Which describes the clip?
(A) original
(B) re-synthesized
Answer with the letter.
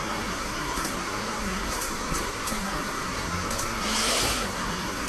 B